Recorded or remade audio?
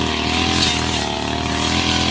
recorded